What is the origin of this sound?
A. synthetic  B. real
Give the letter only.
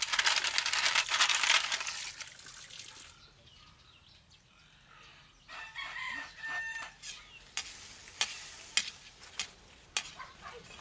B